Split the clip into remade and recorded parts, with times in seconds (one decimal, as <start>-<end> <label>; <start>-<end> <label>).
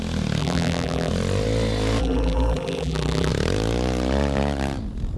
0.0-0.4 recorded; 0.4-1.1 remade; 1.1-2.0 recorded; 2.0-3.3 remade; 3.3-5.2 recorded